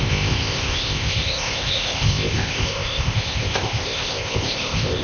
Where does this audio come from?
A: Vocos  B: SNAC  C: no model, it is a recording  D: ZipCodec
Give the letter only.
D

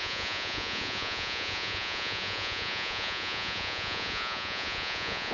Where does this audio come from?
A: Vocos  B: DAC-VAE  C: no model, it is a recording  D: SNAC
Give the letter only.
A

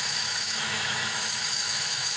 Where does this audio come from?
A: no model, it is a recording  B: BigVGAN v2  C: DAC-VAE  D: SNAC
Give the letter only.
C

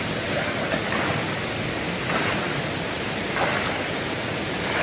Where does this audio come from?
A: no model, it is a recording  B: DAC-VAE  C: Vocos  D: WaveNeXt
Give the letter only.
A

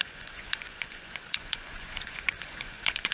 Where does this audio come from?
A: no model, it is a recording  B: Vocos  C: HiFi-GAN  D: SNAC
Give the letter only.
B